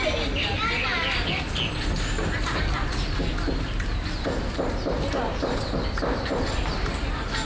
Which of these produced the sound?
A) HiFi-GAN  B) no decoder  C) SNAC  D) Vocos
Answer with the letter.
B